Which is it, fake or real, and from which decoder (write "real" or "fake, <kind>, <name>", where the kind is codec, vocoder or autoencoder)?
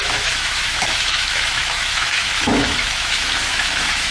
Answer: fake, autoencoder, DAC-VAE